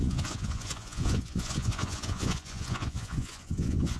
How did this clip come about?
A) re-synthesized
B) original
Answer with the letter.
A